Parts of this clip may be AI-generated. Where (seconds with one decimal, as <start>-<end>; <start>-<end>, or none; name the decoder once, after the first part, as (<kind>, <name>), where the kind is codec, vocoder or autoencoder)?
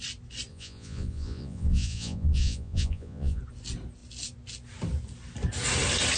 0.5-3.4 (vocoder, Vocos)